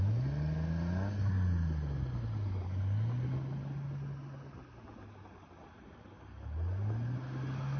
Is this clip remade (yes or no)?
no